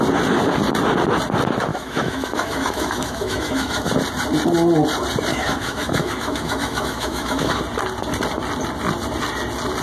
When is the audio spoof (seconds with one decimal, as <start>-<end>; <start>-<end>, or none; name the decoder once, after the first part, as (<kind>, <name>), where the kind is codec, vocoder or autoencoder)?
1.7-3.9 (autoencoder, DAC-VAE); 5.3-7.6